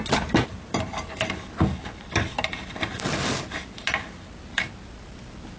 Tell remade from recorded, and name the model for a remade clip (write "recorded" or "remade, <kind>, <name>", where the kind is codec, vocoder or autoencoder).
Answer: recorded